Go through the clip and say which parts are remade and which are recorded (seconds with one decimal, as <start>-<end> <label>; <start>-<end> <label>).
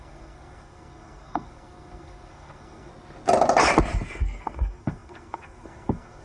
0.0-2.9 remade; 2.9-3.9 recorded; 3.9-6.2 remade